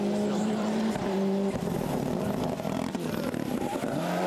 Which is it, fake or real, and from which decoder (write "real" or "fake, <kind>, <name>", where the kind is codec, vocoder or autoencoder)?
fake, vocoder, BigVGAN v2